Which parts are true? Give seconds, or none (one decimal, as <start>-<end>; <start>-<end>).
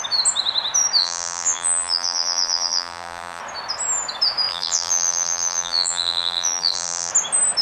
0.0-1.0; 3.4-4.5; 7.1-7.6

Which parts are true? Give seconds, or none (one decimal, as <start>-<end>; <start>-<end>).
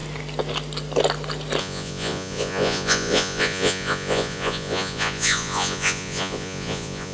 0.0-1.6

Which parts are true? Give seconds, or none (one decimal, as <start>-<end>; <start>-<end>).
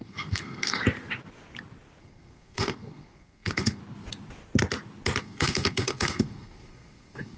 0.8-2.0; 3.8-5.2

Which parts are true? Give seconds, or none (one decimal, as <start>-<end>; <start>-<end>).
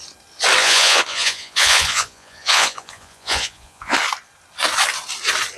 0.0-0.6; 4.0-5.6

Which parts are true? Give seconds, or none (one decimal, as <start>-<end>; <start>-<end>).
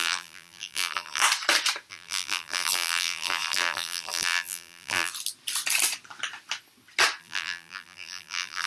1.2-1.9; 5.1-7.2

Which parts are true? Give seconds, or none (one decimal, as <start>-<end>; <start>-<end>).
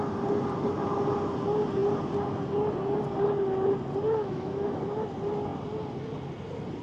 0.0-4.2; 4.8-6.8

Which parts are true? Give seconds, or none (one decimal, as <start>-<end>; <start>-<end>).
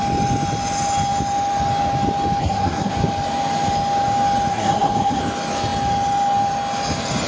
0.0-2.4; 2.9-4.5; 5.2-7.3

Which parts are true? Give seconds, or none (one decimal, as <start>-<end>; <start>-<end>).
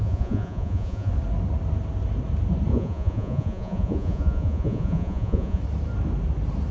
1.1-2.7; 5.6-6.7